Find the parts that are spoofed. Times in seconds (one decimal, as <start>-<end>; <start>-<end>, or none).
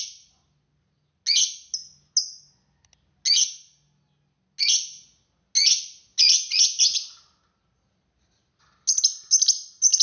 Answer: none